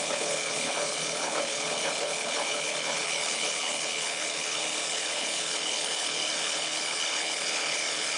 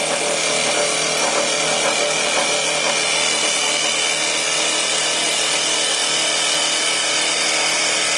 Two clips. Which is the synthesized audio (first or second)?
first